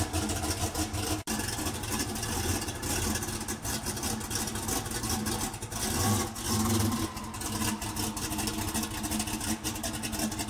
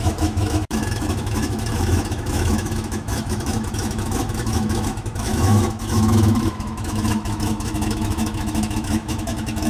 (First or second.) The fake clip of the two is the second